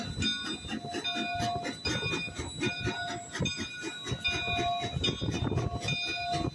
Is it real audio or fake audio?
real